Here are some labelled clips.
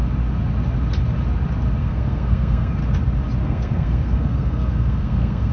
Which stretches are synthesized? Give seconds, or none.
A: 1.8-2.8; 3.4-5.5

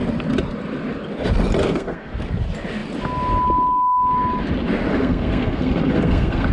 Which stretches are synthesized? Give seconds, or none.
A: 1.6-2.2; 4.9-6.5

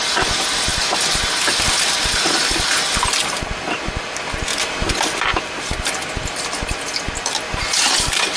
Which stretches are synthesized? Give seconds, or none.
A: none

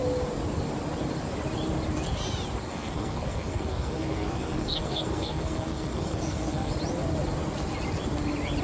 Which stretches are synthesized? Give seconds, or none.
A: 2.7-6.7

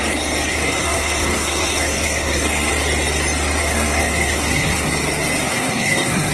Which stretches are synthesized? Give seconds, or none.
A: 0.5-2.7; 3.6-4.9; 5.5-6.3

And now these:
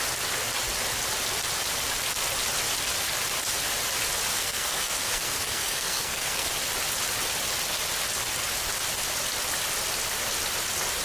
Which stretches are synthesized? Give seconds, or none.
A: 4.3-6.5

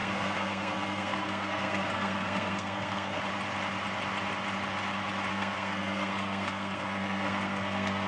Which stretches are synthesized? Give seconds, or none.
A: 0.0-3.2; 5.3-8.1